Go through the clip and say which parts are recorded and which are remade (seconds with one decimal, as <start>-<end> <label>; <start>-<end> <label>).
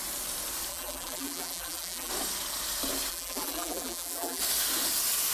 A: 0.0-0.7 recorded; 0.7-2.1 remade; 2.1-3.1 recorded; 3.1-4.4 remade; 4.4-5.3 recorded